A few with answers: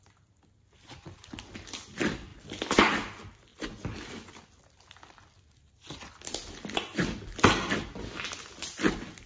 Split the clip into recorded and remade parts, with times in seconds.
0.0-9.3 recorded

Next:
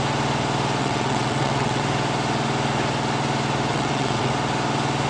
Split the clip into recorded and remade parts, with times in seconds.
0.0-0.8 recorded; 0.8-1.8 remade; 1.8-3.7 recorded; 3.7-4.3 remade; 4.3-5.1 recorded

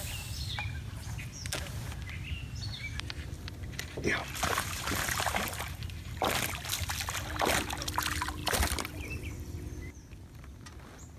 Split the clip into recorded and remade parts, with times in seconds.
0.0-4.2 recorded; 4.2-6.7 remade; 6.7-8.4 recorded; 8.4-10.1 remade; 10.1-11.2 recorded

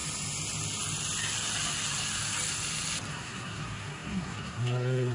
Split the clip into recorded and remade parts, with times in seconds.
0.0-3.1 recorded; 3.1-5.1 remade

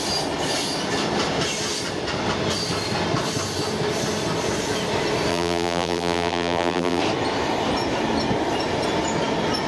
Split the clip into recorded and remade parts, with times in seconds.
0.0-5.3 recorded; 5.3-7.0 remade; 7.0-9.7 recorded